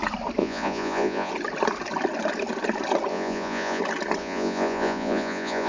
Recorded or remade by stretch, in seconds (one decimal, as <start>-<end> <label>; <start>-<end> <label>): 0.0-0.4 recorded; 0.4-1.3 remade; 1.3-3.1 recorded; 3.1-3.8 remade; 3.8-4.2 recorded; 4.2-5.7 remade